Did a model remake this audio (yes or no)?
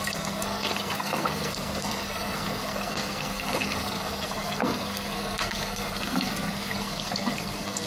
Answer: yes